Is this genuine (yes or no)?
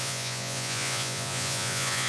no